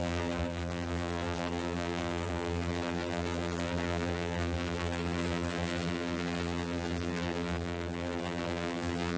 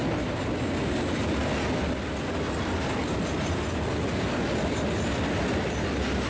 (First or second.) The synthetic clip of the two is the first